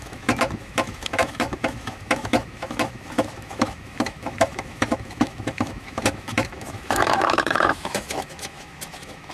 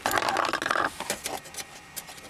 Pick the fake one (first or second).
first